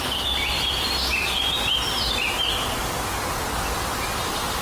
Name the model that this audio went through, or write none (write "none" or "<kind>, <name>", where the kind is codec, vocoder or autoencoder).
none